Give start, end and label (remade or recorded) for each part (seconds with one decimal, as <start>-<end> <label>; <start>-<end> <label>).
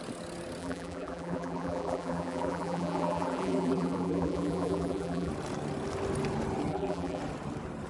0.0-0.6 recorded; 0.6-5.3 remade; 5.3-6.7 recorded; 6.7-7.2 remade; 7.2-7.9 recorded